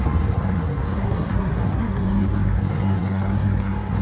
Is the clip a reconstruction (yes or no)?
yes